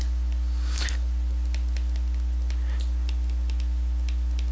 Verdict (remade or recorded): recorded